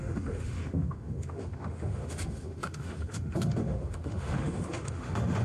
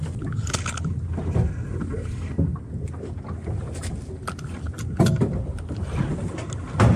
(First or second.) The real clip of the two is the second